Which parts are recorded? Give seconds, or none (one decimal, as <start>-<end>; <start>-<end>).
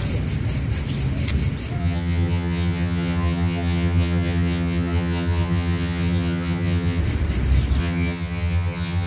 0.0-1.8; 7.0-7.8